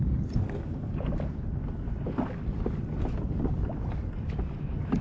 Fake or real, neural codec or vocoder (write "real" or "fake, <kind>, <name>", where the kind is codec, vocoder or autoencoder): real